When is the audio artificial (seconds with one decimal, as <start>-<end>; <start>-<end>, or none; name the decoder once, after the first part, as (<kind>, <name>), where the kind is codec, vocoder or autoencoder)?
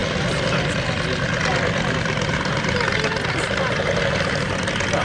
1.9-5.0 (vocoder, BigVGAN v2)